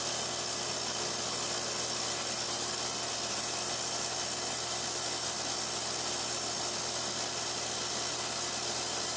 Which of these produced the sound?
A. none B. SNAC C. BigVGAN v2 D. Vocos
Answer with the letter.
A